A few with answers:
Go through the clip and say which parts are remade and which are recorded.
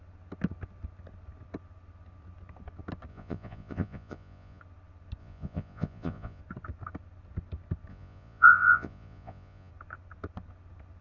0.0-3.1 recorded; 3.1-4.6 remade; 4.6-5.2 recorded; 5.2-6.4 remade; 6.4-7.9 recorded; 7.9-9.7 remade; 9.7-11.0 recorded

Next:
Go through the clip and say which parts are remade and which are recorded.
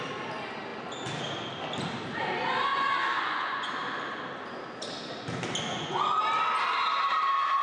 0.0-2.7 recorded; 2.7-3.7 remade; 3.7-5.7 recorded; 5.7-6.2 remade; 6.2-7.6 recorded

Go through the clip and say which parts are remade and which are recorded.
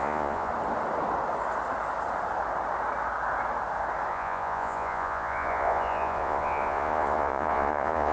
0.0-0.5 remade; 0.5-4.1 recorded; 4.1-8.1 remade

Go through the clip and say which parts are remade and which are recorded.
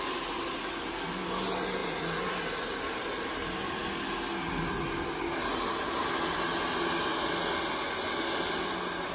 0.0-9.1 recorded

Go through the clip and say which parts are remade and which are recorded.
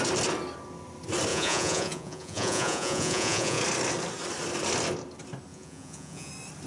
0.0-1.3 recorded; 1.3-3.6 remade; 3.6-5.5 recorded; 5.5-6.3 remade; 6.3-6.7 recorded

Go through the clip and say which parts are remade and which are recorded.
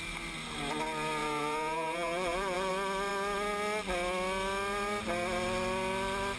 0.0-1.2 recorded; 1.2-2.7 remade; 2.7-6.4 recorded